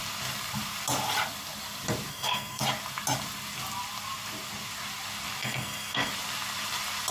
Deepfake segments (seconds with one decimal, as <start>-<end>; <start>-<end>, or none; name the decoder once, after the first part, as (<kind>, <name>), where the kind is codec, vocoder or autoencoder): 2.1-2.6 (codec, SNAC); 5.4-6.1